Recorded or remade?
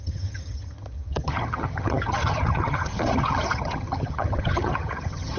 remade